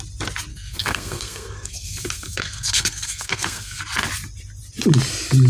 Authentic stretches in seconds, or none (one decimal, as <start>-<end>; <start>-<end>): 0.0-0.5; 3.8-5.5